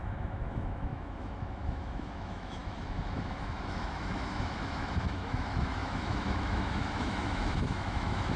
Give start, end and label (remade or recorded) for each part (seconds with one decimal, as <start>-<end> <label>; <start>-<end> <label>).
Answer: 0.0-8.4 remade